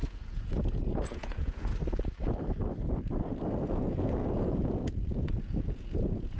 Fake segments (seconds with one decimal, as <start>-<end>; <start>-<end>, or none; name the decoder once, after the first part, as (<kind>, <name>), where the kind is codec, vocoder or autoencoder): 0.0-1.7 (vocoder, Vocos); 3.8-6.4